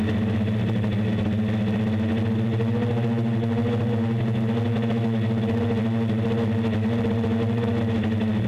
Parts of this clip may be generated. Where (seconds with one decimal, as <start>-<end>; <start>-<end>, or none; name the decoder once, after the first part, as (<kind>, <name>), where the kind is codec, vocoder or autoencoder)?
none